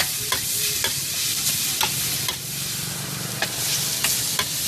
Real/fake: real